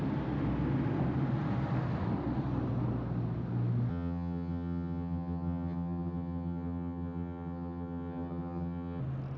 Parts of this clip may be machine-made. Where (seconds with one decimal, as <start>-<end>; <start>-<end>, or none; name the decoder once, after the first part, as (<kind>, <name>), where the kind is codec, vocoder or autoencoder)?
3.9-9.0 (vocoder, HiFi-GAN)